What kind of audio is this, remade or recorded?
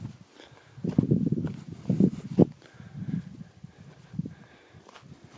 recorded